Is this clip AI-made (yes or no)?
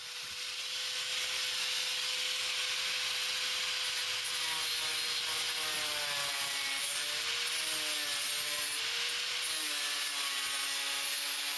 no